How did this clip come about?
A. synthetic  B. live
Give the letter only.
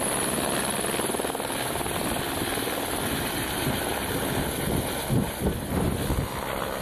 B